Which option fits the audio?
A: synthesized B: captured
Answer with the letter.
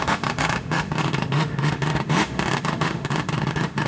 A